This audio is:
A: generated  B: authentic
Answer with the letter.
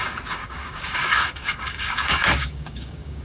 A